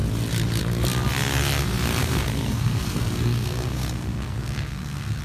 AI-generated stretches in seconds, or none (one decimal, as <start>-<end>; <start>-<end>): 2.0-5.2